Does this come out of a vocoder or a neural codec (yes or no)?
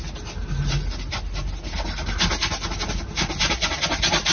no